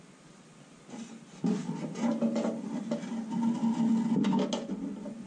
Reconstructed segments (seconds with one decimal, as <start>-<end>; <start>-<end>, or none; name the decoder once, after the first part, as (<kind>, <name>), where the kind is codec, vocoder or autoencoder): none

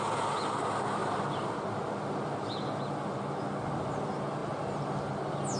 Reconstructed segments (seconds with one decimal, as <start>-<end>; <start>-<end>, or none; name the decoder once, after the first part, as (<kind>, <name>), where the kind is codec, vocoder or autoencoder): none